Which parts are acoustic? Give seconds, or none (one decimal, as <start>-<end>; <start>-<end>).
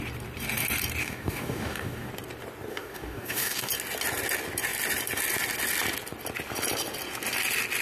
0.0-1.0; 2.1-2.7; 3.7-7.8